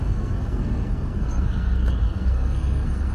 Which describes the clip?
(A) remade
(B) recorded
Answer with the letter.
A